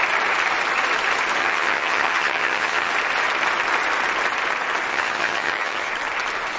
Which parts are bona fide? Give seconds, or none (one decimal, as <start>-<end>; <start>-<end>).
0.0-1.4; 2.9-4.9; 5.9-6.6